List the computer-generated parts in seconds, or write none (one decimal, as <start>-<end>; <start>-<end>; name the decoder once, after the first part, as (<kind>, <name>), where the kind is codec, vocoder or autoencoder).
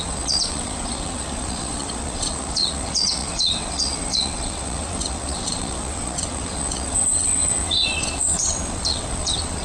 0.0-9.6 (vocoder, WaveNeXt)